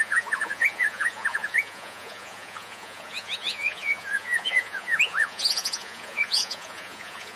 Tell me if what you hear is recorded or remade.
remade